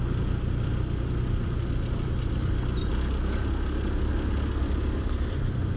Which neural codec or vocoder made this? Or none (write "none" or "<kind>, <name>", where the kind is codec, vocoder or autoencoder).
none